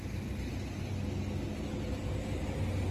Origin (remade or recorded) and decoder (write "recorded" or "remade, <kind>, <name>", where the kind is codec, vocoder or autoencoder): recorded